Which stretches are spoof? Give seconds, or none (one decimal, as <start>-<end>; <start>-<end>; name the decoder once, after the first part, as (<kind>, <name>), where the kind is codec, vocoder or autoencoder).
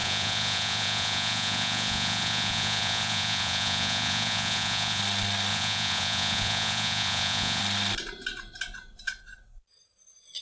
0.0-5.0 (vocoder, Vocos); 5.5-7.6